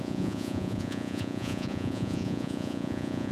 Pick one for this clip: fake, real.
fake